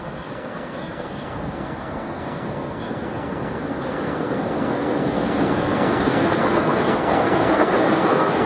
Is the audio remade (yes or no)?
yes